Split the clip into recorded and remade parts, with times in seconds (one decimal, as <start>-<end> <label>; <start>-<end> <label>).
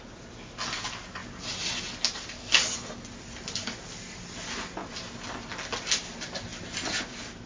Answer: 0.0-7.5 recorded